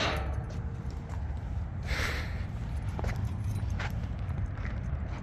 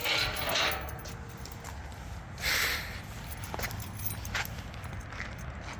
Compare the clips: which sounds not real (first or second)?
first